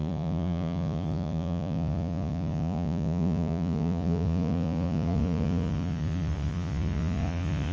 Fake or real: fake